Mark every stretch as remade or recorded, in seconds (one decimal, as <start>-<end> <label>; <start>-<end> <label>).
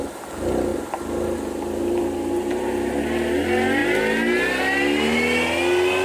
0.0-6.0 recorded